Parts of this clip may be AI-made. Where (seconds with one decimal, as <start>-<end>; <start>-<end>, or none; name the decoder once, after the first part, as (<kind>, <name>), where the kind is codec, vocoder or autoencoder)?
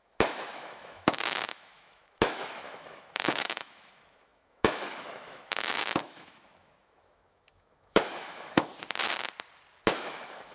0.0-8.7 (autoencoder, DAC-VAE); 9.9-10.5